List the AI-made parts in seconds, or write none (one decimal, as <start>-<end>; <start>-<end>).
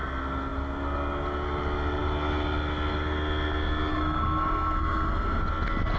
3.9-5.4